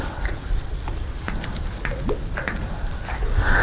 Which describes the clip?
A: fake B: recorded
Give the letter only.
B